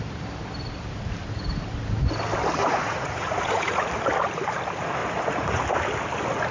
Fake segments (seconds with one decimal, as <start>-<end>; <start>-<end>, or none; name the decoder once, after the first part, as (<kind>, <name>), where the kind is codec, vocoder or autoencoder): 2.6-3.8 (vocoder, Vocos); 5.0-5.6